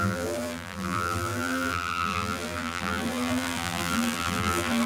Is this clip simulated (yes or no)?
yes